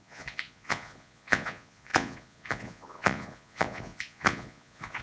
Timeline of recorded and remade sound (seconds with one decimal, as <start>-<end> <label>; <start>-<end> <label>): 0.0-5.0 remade